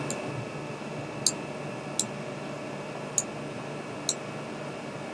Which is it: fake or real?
real